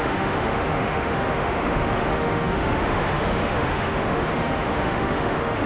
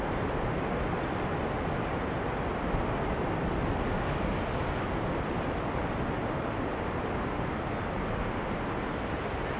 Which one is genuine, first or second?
second